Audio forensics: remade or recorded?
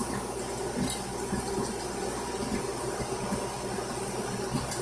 recorded